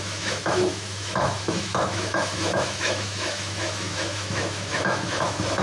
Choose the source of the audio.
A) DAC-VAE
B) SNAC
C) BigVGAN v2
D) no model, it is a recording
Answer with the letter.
A